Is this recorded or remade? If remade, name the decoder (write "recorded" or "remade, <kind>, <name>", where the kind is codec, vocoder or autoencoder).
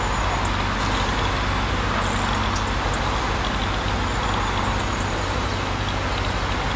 recorded